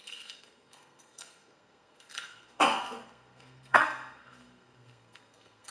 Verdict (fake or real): fake